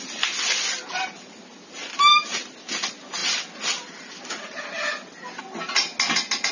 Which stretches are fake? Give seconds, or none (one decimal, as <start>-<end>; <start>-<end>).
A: none